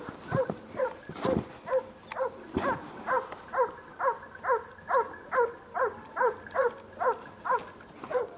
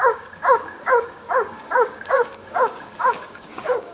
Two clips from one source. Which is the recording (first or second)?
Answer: first